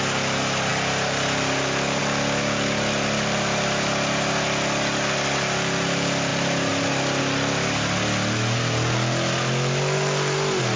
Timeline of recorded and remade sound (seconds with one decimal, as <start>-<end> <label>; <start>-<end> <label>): 0.0-10.8 recorded